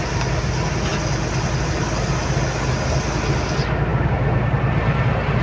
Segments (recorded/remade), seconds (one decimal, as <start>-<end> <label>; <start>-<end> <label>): 0.0-5.4 recorded